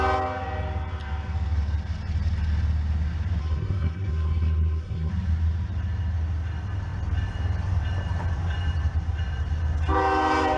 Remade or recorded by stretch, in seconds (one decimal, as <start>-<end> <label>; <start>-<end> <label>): 0.0-3.4 recorded; 3.4-5.1 remade; 5.1-10.6 recorded